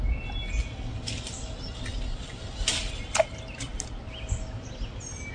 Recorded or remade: recorded